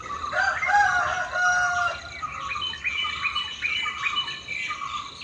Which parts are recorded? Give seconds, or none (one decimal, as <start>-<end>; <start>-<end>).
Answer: 0.0-5.2